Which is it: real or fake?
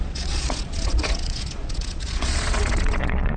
fake